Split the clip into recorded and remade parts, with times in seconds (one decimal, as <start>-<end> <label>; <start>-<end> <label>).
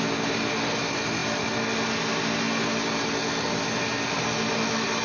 0.0-5.0 recorded